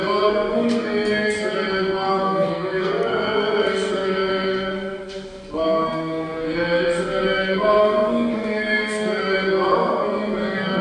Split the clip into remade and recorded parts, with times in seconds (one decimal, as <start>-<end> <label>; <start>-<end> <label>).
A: 0.0-10.8 remade